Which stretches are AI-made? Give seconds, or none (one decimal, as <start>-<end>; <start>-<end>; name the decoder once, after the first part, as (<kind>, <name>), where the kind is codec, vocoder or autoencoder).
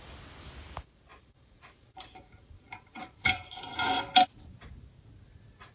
1.1-3.6 (vocoder, BigVGAN v2)